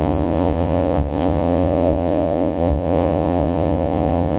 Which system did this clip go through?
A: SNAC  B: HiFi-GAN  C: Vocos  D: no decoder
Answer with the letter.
C